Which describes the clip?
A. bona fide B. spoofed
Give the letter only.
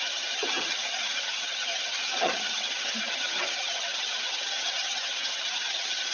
B